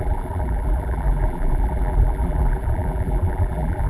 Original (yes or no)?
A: no